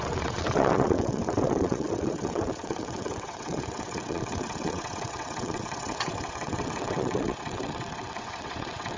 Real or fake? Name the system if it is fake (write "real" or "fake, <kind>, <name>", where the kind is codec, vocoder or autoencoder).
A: fake, vocoder, WaveNeXt